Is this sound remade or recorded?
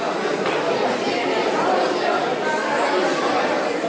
remade